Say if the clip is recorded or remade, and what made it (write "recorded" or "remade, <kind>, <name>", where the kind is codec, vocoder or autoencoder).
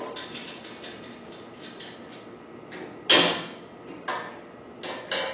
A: recorded